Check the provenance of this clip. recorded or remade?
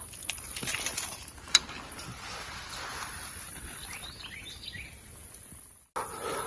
recorded